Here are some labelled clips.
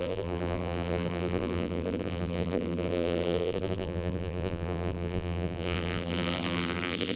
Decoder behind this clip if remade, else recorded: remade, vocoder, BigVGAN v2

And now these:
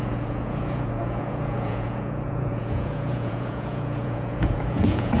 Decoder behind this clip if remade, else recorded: remade, vocoder, Vocos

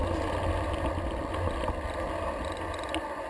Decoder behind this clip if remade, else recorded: recorded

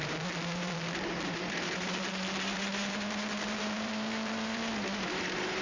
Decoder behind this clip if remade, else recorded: remade, vocoder, BigVGAN v2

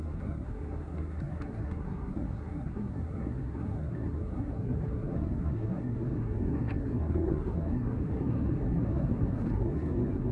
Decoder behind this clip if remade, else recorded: remade, codec, SNAC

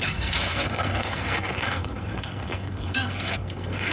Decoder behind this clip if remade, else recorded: remade, codec, SNAC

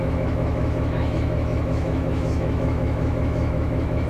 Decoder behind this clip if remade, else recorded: remade, autoencoder, DAC-VAE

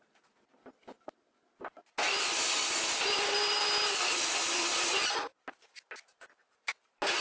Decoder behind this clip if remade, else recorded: recorded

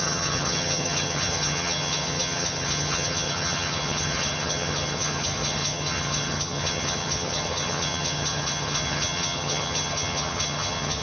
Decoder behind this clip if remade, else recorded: remade, vocoder, HiFi-GAN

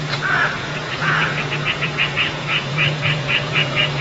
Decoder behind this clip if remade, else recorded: remade, vocoder, Vocos